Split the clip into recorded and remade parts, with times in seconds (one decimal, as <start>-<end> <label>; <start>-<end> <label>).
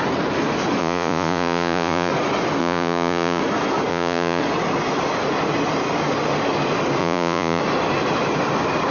0.0-0.8 recorded; 0.8-2.1 remade; 2.1-2.6 recorded; 2.6-3.4 remade; 3.4-3.9 recorded; 3.9-4.4 remade; 4.4-7.0 recorded; 7.0-7.6 remade; 7.6-8.9 recorded